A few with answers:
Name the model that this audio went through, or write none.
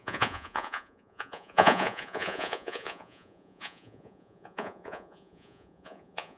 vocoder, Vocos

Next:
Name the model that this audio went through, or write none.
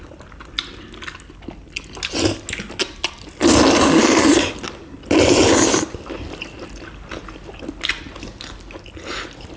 none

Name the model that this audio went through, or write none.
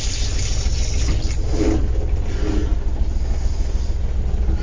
none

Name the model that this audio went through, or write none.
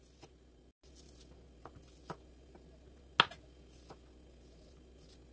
none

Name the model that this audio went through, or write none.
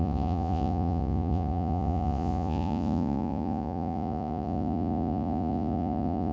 vocoder, Vocos